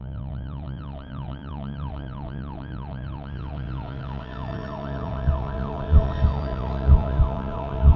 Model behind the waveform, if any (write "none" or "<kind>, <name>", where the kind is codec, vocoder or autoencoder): vocoder, WaveNeXt